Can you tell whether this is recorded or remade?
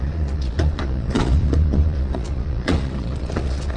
remade